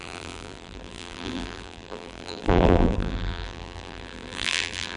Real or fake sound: fake